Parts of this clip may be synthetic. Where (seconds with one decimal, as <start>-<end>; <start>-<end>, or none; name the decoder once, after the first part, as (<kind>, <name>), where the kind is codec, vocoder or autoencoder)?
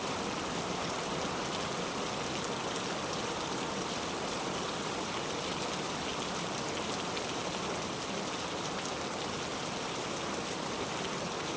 0.0-7.4 (vocoder, BigVGAN v2); 9.3-11.6